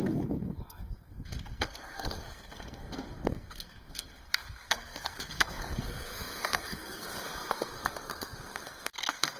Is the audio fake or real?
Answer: fake